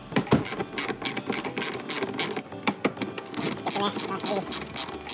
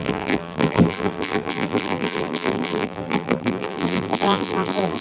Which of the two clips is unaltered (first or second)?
first